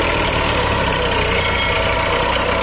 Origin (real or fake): real